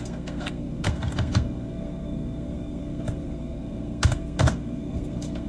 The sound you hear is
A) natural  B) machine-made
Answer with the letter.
B